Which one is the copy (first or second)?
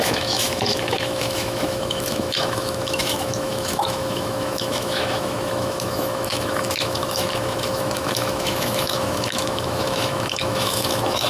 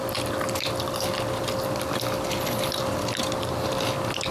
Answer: first